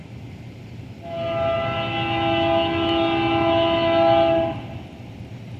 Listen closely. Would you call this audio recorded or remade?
recorded